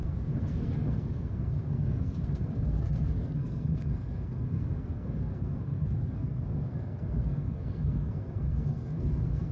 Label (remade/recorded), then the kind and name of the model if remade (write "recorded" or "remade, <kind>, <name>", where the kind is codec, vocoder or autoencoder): remade, codec, SNAC